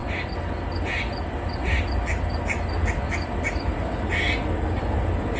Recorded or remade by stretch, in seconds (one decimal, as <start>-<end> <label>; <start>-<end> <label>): 0.0-5.4 recorded